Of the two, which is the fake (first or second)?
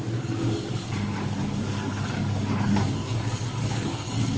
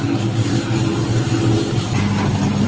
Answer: first